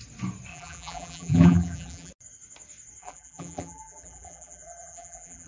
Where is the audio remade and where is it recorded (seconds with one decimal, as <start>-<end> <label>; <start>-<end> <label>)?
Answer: 0.0-0.5 recorded; 0.5-2.1 remade; 2.1-3.0 recorded; 3.0-5.5 remade